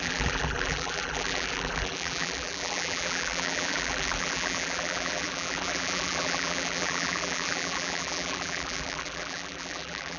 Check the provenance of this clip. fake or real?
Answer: fake